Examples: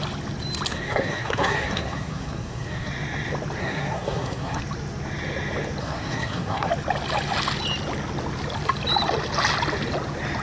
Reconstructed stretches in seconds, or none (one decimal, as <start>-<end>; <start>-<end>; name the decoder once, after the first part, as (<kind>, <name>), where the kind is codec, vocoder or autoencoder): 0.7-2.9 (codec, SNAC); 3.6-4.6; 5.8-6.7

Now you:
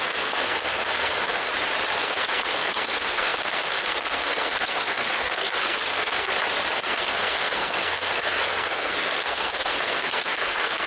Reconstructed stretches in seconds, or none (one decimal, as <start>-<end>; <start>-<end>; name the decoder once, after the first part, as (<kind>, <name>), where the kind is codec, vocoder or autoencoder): 0.0-1.5 (codec, SNAC); 2.0-6.3; 6.8-10.9

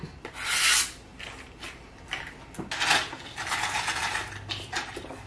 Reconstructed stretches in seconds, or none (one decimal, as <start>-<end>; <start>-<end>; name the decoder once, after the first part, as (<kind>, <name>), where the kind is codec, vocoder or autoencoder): none

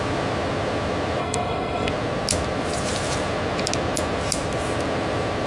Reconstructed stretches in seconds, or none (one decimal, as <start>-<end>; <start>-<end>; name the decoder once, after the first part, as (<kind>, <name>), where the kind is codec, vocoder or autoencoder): 1.2-1.9 (codec, SNAC)

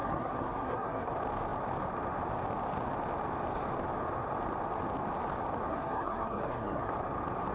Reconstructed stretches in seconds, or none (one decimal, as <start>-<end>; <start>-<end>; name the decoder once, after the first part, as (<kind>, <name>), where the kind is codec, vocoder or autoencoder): 0.0-1.1 (codec, SNAC); 5.7-6.9